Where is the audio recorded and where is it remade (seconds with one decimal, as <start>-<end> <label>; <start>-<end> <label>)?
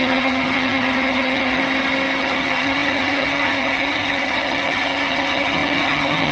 0.0-1.6 remade; 1.6-2.2 recorded; 2.2-6.3 remade